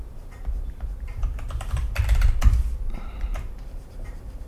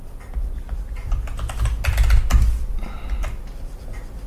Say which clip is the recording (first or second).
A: second